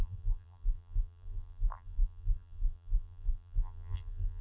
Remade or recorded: remade